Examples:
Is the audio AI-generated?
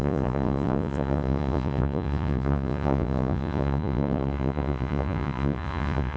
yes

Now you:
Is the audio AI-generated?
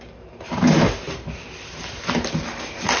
no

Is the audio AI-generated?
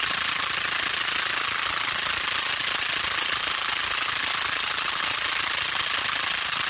no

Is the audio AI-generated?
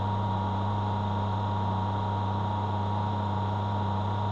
no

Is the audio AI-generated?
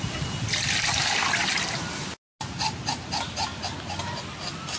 no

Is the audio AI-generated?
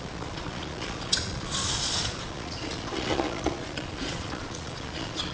yes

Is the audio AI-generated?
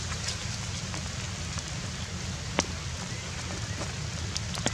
no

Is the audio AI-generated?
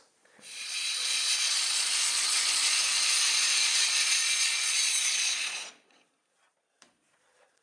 yes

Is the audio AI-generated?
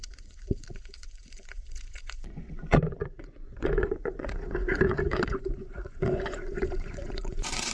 yes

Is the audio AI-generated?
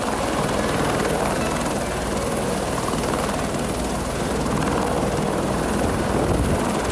no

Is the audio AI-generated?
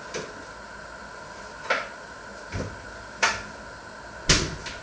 no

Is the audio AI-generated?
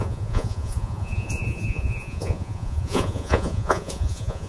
yes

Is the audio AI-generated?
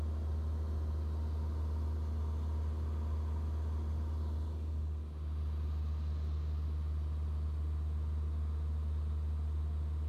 no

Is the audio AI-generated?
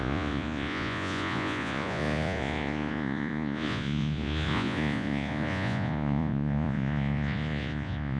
yes